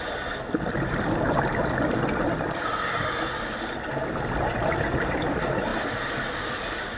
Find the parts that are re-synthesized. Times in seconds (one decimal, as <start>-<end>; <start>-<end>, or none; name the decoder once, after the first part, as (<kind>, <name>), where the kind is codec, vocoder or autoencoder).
none